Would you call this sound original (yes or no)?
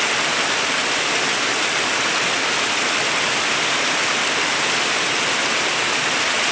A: yes